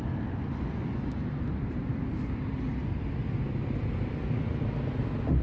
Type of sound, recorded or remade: recorded